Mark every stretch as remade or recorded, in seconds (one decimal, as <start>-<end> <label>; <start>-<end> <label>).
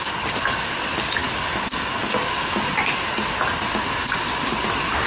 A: 0.0-5.1 recorded